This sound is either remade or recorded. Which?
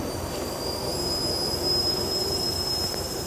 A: recorded